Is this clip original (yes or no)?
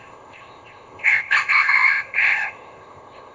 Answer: no